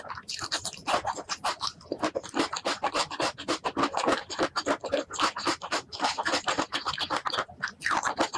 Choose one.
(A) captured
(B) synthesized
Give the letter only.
A